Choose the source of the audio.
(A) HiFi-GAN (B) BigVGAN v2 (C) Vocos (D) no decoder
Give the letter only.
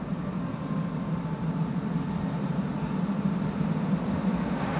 D